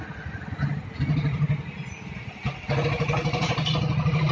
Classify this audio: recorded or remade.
recorded